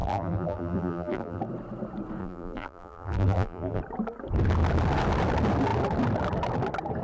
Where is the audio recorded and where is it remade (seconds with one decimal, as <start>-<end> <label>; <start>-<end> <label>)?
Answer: 0.0-1.4 remade; 1.4-2.2 recorded; 2.2-3.8 remade; 3.8-7.0 recorded